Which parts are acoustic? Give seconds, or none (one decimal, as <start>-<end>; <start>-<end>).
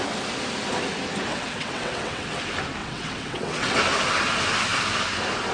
0.0-1.3; 2.4-2.8; 3.8-5.5